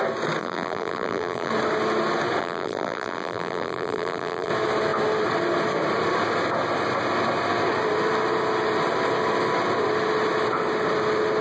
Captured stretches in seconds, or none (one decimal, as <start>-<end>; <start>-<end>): 0.0-0.4; 1.5-2.4; 4.5-11.4